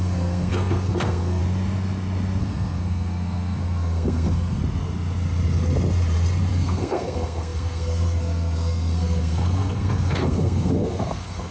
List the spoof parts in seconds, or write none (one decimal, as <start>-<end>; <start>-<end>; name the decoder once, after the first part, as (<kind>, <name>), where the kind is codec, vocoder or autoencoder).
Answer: 0.0-1.4 (codec, SNAC); 2.4-4.6; 6.5-11.5